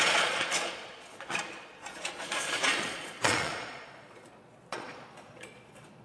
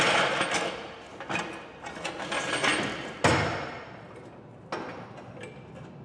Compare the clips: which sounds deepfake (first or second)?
first